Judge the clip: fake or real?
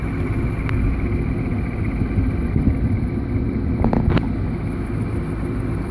real